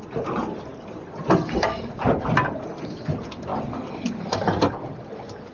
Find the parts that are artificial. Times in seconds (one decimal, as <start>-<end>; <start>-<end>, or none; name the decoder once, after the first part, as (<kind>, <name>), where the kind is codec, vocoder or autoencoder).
0.0-3.5 (vocoder, BigVGAN v2); 4.0-5.5